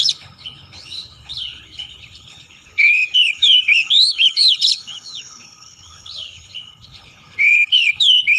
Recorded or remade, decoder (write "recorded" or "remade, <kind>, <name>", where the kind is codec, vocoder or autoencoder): remade, codec, HILCodec